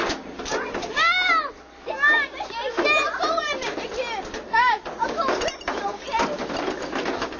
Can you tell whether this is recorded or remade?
recorded